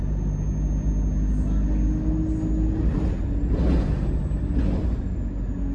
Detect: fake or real real